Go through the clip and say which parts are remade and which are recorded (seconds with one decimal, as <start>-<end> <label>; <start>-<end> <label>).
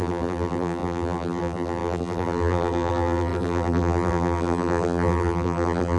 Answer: 0.0-6.0 remade